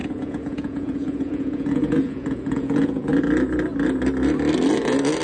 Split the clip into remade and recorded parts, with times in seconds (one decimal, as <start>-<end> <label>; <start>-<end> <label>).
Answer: 0.0-3.1 remade; 3.1-5.2 recorded